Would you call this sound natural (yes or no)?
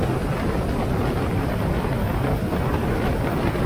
yes